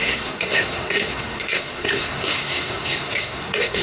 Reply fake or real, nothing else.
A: fake